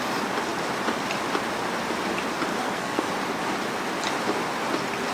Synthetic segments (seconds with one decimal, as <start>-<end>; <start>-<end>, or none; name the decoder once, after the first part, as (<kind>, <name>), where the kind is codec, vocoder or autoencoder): 2.5-3.1 (codec, SNAC)